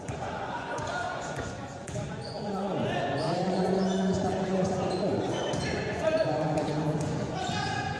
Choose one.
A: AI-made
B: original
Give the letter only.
A